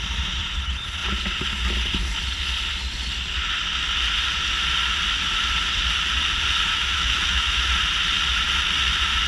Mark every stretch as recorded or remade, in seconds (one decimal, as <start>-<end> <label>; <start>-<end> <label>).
0.0-6.7 recorded; 6.7-7.6 remade; 7.6-9.3 recorded